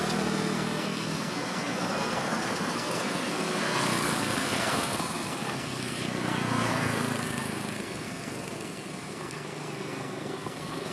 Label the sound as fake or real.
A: fake